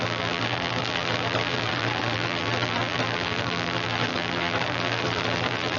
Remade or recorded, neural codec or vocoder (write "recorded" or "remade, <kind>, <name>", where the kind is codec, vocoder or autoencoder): remade, vocoder, BigVGAN v2